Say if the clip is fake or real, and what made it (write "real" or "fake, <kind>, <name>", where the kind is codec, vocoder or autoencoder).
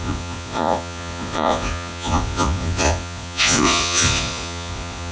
fake, vocoder, Vocos